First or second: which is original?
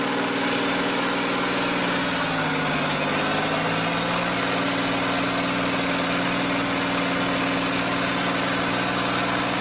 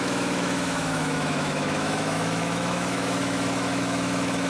first